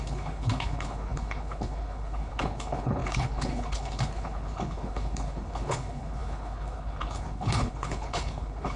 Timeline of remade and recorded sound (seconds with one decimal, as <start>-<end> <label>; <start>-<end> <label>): 0.0-8.8 remade